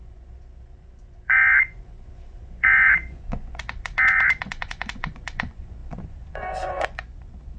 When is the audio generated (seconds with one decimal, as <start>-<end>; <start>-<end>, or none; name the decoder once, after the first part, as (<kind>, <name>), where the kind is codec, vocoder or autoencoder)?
0.0-7.6 (vocoder, Vocos)